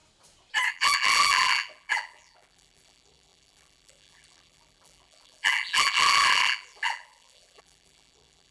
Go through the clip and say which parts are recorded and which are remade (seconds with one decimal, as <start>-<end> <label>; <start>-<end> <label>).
0.0-0.7 recorded; 0.7-8.5 remade